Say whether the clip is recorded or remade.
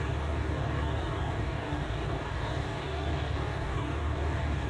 remade